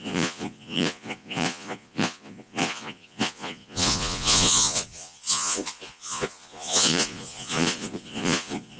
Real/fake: fake